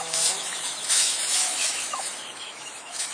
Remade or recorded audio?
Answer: remade